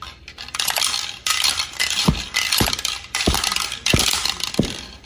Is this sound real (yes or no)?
no